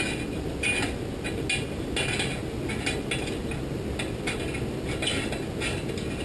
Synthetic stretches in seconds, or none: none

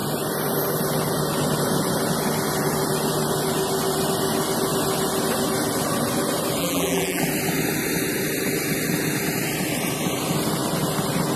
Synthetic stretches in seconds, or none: 6.6-7.2 (vocoder, BigVGAN v2)